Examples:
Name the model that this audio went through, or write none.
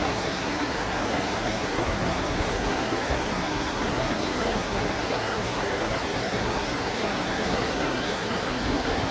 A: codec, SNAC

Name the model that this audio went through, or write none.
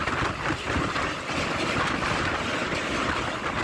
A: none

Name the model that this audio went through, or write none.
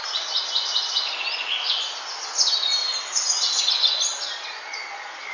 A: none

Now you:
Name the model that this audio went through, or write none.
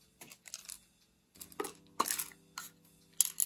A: none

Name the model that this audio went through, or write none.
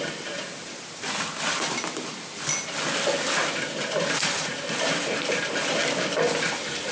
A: none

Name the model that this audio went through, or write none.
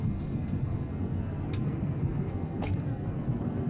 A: codec, SNAC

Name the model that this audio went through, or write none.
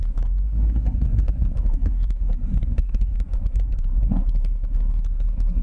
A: codec, SNAC